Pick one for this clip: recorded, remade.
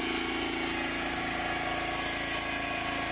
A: recorded